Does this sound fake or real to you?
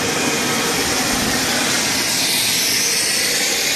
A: fake